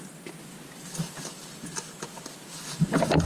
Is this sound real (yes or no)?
yes